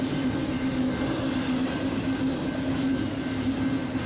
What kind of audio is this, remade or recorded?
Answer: recorded